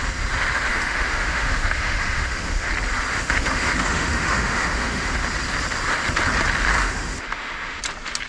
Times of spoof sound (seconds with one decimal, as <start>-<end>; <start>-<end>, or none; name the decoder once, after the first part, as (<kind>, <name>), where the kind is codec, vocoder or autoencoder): 0.7-2.7 (autoencoder, DAC-VAE); 3.1-5.1; 6.8-7.8